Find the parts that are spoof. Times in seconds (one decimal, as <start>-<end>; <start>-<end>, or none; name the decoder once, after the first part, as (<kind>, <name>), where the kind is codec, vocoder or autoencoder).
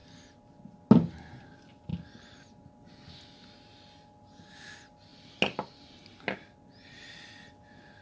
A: none